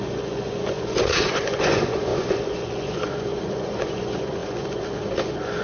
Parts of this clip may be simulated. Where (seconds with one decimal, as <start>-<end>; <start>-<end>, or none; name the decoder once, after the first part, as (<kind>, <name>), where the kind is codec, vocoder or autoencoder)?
0.0-5.6 (vocoder, Vocos)